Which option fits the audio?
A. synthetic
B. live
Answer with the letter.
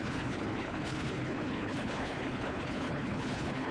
A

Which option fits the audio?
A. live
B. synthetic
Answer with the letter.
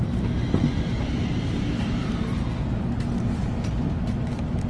A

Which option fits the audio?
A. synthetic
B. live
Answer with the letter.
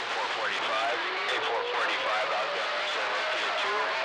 B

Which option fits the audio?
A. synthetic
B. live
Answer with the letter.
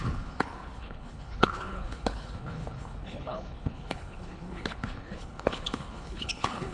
A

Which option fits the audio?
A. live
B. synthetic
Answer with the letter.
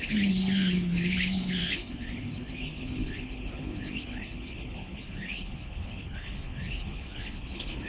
B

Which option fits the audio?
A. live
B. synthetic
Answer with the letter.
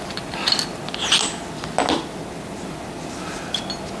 A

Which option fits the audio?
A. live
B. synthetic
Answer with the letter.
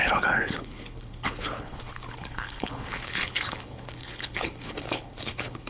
B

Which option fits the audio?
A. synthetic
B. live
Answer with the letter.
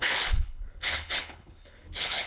A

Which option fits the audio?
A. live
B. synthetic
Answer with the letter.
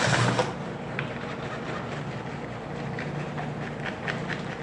A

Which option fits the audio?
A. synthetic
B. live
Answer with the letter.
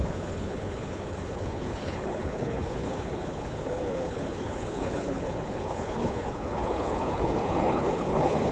A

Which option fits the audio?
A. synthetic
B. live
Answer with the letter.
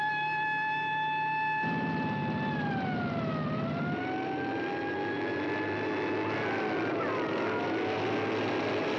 B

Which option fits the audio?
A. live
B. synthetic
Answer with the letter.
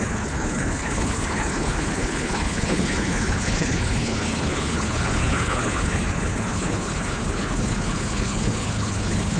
B